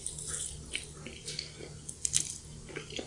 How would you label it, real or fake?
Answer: real